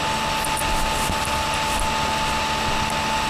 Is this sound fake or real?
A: real